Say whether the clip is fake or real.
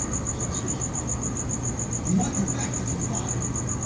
real